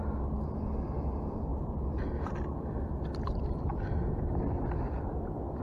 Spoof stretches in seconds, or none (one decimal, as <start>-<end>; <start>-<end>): none